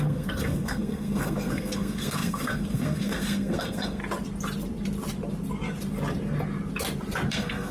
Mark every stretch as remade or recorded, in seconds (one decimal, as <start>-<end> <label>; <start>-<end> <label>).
0.0-4.0 remade; 4.0-7.3 recorded; 7.3-7.7 remade